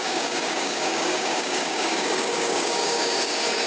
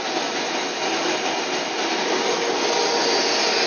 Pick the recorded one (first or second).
second